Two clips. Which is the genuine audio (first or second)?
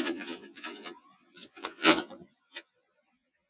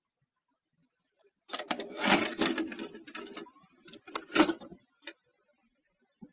second